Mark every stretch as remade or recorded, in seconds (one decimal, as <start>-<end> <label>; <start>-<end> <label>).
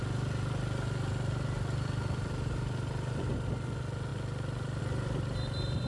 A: 0.0-5.9 recorded